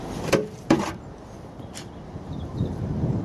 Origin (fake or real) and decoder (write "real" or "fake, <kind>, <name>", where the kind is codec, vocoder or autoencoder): fake, vocoder, BigVGAN v2